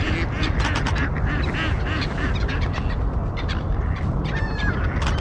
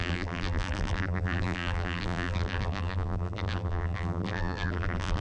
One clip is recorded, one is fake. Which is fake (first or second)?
second